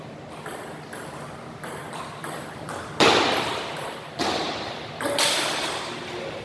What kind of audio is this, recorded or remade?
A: remade